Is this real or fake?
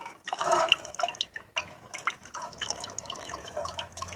fake